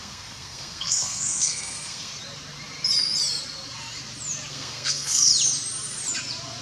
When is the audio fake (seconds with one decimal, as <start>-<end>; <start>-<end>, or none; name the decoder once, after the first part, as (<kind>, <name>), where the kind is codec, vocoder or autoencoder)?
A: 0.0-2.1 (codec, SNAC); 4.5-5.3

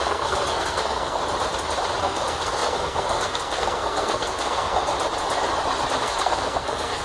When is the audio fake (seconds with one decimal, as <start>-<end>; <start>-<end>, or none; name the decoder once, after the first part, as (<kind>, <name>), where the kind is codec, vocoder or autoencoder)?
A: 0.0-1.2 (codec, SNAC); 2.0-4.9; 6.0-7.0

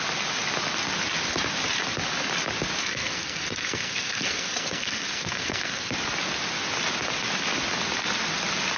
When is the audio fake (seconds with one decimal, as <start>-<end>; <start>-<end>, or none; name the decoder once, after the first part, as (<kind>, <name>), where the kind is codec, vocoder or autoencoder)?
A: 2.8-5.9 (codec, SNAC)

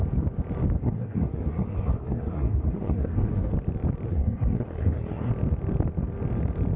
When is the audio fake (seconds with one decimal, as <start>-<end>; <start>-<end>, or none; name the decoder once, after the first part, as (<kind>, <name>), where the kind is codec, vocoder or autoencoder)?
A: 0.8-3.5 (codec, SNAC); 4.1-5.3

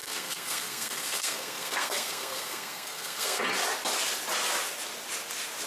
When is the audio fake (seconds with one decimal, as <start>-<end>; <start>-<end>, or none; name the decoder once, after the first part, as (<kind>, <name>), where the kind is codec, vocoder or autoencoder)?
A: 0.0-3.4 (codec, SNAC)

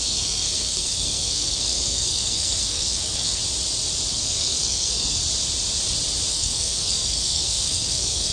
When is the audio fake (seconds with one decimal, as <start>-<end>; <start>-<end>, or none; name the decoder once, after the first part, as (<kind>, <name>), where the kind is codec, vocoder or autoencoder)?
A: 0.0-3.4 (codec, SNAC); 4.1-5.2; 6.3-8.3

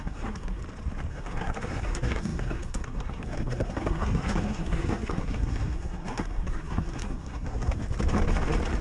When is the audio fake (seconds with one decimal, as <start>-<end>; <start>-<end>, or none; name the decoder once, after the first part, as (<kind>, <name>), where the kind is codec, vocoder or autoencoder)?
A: 0.0-0.6 (codec, SNAC); 1.1-7.8